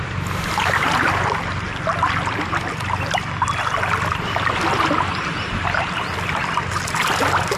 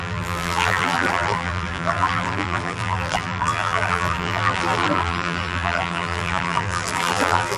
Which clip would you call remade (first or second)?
second